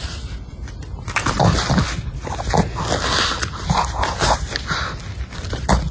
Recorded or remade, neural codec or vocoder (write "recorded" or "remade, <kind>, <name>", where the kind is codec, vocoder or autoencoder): recorded